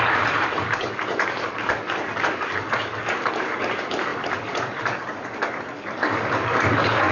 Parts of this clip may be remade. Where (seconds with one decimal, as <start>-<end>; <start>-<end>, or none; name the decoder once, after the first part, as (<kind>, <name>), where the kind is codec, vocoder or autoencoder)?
0.0-7.1 (codec, DAC)